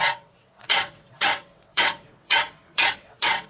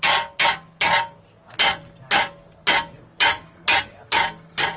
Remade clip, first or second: first